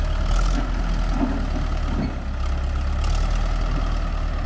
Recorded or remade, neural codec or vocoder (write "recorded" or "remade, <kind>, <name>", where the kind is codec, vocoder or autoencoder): recorded